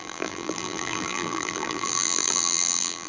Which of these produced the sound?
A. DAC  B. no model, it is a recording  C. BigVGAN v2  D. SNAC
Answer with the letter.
C